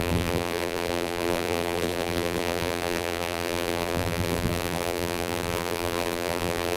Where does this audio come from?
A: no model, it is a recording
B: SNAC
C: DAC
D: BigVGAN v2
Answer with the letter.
D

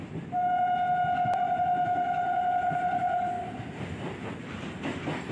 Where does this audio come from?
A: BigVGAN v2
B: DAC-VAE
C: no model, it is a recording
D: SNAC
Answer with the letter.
C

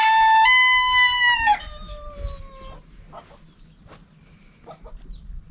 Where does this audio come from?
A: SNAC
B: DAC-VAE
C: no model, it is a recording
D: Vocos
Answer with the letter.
C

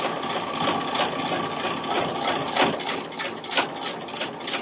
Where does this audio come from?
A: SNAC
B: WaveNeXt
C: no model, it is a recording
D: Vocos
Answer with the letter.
C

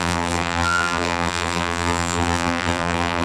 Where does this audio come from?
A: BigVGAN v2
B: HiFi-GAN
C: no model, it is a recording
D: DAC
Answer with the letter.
A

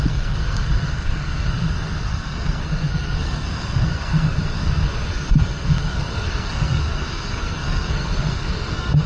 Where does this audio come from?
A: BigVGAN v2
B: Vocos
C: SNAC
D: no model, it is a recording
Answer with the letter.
C